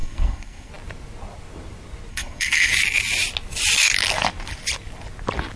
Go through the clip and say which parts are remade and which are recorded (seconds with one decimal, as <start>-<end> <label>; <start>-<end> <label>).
0.0-0.7 remade; 0.7-2.1 recorded; 2.1-2.7 remade; 2.7-5.6 recorded